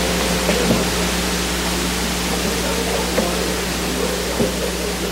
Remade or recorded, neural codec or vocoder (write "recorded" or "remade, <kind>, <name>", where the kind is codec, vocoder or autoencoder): recorded